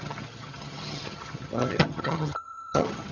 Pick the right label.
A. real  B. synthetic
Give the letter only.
B